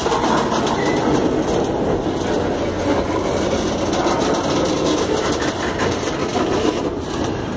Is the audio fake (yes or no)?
no